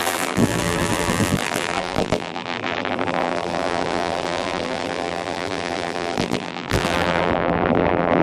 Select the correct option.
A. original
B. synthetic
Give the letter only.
B